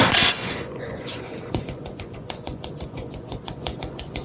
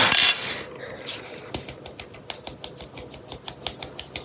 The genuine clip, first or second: second